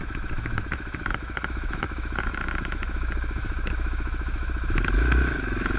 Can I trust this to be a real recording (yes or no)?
no